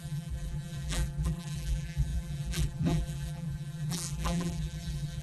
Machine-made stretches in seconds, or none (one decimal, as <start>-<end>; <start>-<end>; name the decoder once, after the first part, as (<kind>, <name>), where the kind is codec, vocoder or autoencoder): 0.0-5.2 (vocoder, BigVGAN v2)